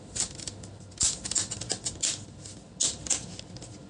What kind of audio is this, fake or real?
real